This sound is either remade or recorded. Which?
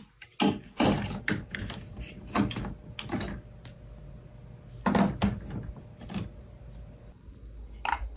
recorded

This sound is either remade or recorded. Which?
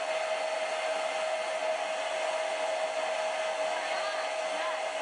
recorded